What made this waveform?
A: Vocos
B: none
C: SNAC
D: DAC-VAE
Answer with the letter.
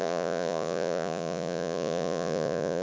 A